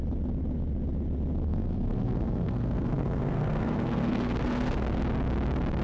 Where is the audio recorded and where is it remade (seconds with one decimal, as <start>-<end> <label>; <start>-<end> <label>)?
0.0-1.5 recorded; 1.5-5.0 remade; 5.0-5.8 recorded